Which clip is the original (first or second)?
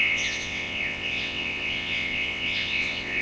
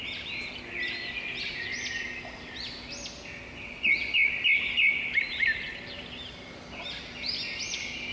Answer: second